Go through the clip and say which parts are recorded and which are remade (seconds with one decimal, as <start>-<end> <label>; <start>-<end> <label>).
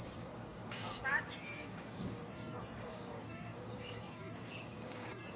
0.0-5.4 remade